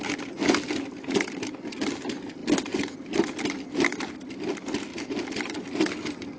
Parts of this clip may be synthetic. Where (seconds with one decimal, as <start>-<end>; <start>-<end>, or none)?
none